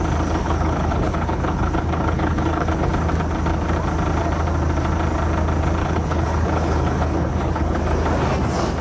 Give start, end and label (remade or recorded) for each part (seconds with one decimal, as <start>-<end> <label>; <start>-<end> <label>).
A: 0.0-0.4 recorded; 0.4-2.9 remade; 2.9-5.8 recorded; 5.8-7.8 remade; 7.8-8.8 recorded